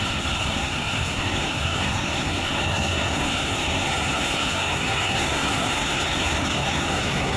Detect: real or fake fake